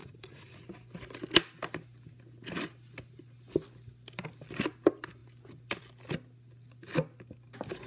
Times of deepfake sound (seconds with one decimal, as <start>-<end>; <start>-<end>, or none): 0.0-0.6